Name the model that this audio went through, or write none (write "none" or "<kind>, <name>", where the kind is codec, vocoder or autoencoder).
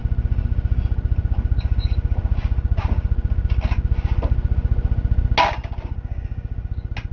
none